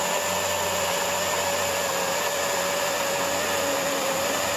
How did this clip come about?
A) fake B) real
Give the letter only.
B